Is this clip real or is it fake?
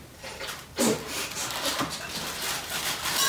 real